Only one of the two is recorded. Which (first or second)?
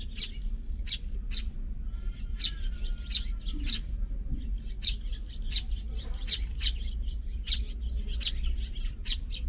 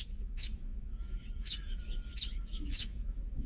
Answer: first